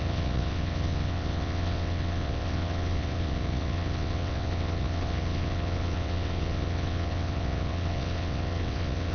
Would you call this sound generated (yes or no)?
yes